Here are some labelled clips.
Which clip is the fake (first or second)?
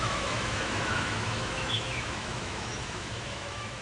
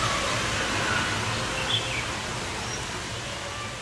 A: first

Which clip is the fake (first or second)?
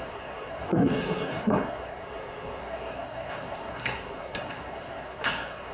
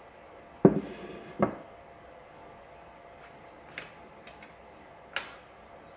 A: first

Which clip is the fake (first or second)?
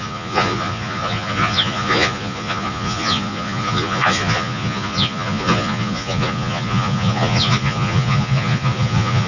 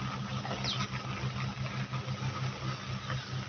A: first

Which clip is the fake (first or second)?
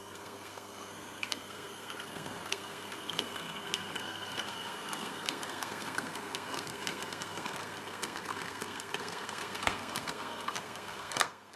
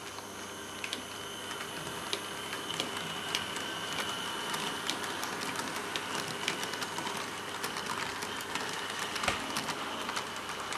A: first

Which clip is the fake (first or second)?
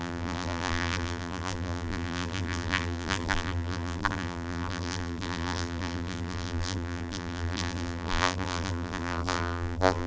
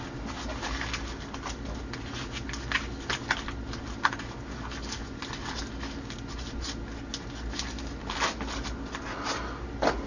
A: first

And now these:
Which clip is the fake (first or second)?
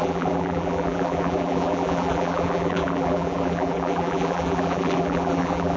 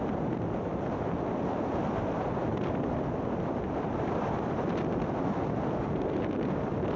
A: first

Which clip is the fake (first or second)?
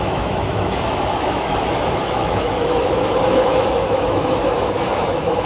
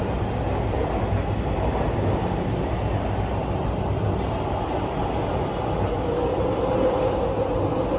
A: first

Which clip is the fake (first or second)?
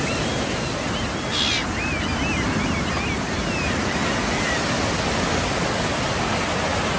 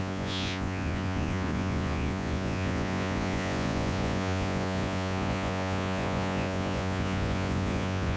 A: second